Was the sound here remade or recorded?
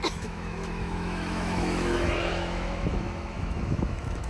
remade